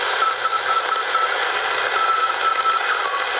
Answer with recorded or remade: recorded